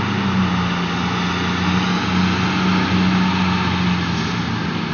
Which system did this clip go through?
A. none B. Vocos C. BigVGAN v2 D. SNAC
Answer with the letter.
A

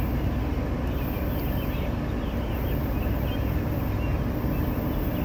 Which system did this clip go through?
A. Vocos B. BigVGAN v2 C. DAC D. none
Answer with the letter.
D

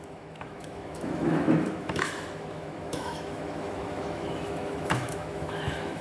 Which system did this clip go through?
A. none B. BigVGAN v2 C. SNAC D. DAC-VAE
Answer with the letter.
D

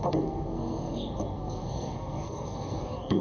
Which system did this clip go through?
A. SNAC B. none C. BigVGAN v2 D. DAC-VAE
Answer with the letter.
A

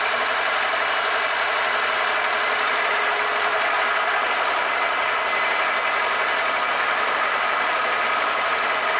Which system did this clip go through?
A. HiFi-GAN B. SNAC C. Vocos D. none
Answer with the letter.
D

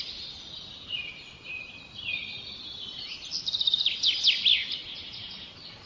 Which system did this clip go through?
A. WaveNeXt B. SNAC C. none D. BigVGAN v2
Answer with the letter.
C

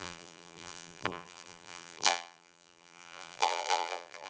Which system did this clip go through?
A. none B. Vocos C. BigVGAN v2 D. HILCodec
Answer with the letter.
C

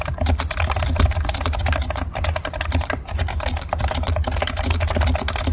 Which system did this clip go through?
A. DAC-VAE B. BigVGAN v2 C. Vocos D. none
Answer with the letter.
D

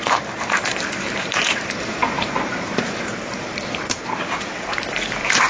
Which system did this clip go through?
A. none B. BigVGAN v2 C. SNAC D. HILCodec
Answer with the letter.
B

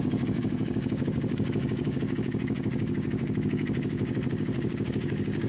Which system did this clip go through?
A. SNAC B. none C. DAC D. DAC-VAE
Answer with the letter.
C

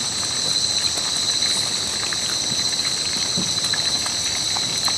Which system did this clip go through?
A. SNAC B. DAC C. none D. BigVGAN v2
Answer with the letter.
C